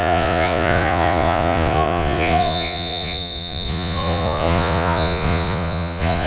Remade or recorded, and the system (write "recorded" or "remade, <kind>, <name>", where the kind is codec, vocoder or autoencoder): remade, vocoder, Vocos